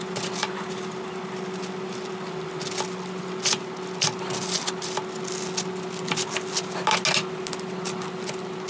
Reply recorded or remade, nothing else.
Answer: recorded